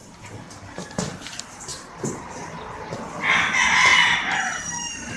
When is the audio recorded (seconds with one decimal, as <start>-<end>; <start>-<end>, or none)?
0.0-3.9; 4.6-5.2